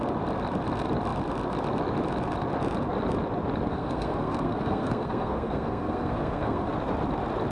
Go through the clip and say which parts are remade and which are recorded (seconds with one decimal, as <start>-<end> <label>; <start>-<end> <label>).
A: 0.0-3.7 recorded; 3.7-6.7 remade; 6.7-7.5 recorded